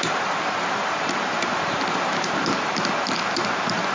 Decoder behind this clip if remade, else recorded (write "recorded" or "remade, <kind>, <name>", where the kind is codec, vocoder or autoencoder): remade, vocoder, BigVGAN v2